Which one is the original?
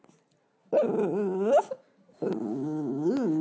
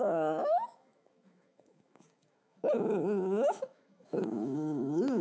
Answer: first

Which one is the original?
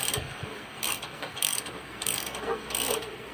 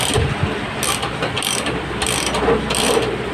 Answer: second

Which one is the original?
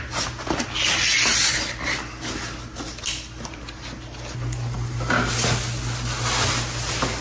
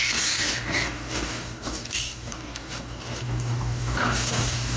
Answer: first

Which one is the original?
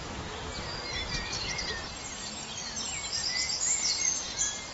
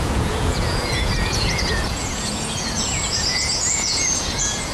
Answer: first